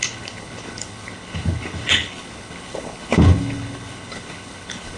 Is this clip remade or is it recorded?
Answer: remade